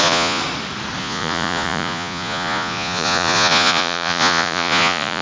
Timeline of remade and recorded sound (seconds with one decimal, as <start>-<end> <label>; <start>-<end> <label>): 0.0-0.4 remade; 0.4-1.0 recorded; 1.0-5.2 remade